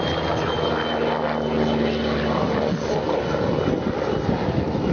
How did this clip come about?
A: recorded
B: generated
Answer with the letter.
A